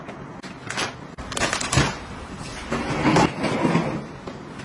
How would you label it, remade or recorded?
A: recorded